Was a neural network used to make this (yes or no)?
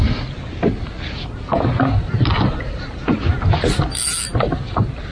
no